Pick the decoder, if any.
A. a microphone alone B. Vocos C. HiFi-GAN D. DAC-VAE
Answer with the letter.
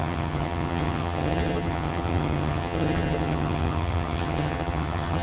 C